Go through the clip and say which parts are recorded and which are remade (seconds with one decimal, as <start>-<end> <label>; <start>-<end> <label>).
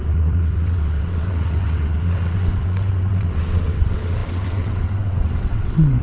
0.0-6.0 remade